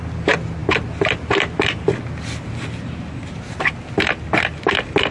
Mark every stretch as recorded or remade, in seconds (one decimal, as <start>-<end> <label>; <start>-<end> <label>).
0.0-5.1 recorded